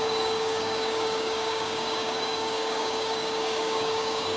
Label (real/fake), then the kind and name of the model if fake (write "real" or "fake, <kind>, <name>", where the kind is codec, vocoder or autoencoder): fake, codec, DAC